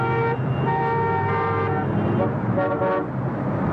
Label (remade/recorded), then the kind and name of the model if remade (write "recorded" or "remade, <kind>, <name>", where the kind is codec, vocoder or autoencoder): recorded